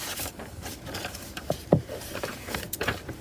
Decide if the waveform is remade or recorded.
remade